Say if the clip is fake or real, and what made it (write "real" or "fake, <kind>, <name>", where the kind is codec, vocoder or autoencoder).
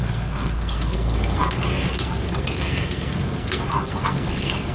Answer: fake, codec, SNAC